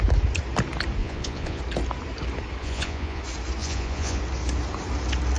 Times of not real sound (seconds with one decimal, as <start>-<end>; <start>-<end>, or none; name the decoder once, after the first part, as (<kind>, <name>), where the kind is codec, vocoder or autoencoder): 1.0-1.6 (vocoder, Vocos); 2.6-3.2; 3.6-4.2